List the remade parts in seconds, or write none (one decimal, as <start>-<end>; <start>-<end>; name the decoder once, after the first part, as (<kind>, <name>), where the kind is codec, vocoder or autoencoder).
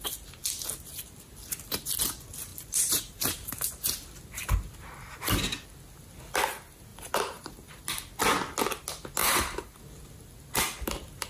2.5-3.7 (vocoder, BigVGAN v2); 6.9-7.8; 9.2-9.8